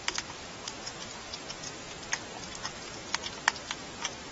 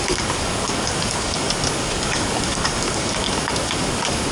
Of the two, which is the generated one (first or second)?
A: second